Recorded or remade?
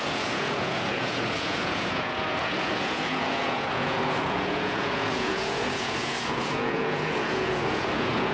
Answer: remade